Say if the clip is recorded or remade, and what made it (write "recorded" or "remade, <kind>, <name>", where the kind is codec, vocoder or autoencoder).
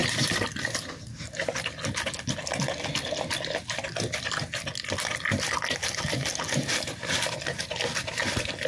recorded